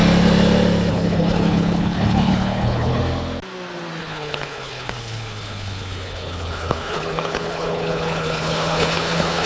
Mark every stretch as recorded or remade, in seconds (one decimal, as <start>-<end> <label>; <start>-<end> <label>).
0.0-0.9 recorded; 0.9-3.0 remade; 3.0-4.0 recorded; 4.0-9.5 remade